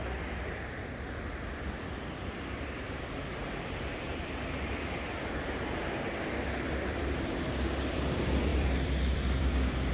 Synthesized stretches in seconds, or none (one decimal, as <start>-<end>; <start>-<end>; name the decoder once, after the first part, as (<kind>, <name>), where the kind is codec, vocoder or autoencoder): 0.0-9.9 (vocoder, BigVGAN v2)